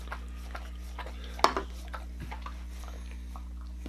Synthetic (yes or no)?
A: no